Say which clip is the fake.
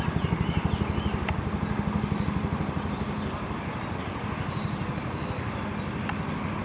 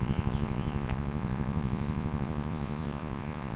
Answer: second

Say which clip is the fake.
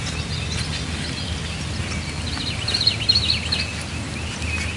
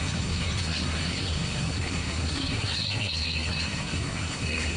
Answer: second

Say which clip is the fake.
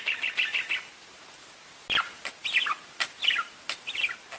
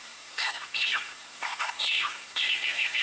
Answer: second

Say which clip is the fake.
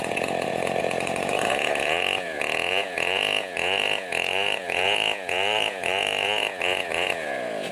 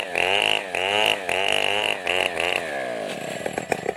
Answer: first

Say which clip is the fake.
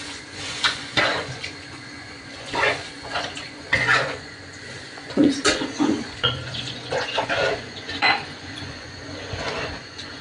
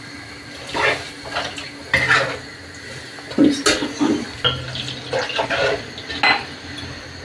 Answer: first